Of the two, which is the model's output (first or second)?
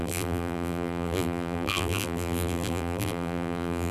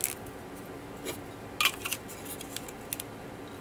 first